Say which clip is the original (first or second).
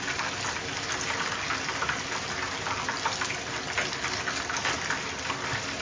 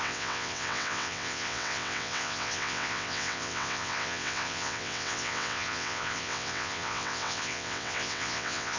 first